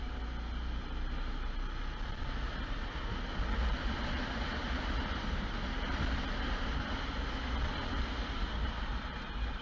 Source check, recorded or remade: recorded